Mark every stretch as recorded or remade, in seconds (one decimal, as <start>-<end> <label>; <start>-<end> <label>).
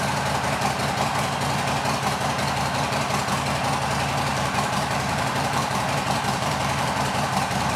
0.0-4.3 recorded; 4.3-7.8 remade